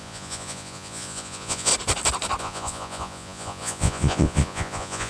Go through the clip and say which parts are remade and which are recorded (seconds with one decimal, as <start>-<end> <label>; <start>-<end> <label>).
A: 0.0-1.7 remade; 1.7-2.4 recorded; 2.4-5.1 remade